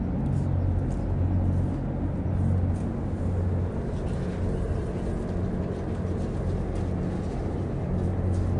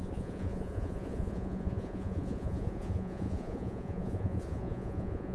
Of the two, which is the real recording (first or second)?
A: first